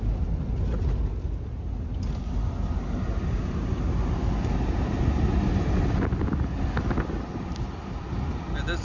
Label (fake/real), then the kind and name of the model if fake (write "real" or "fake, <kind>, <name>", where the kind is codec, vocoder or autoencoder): real